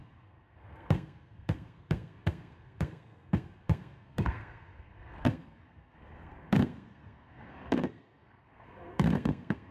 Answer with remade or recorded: remade